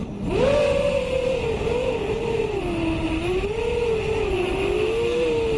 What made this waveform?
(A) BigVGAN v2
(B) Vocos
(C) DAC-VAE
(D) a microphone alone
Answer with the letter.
D